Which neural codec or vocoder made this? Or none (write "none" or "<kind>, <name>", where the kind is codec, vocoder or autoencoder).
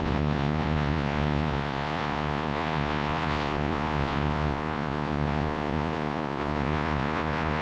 vocoder, Vocos